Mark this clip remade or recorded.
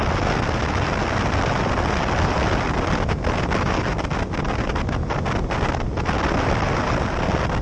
recorded